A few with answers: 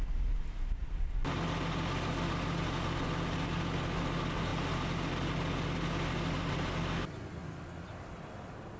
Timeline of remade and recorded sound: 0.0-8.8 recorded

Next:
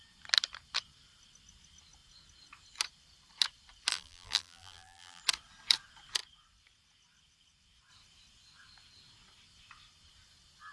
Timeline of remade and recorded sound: 0.0-3.9 recorded; 3.9-5.2 remade; 5.2-10.7 recorded

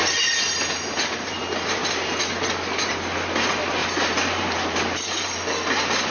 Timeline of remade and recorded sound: 0.0-1.4 remade; 1.4-3.8 recorded; 3.8-5.3 remade; 5.3-6.1 recorded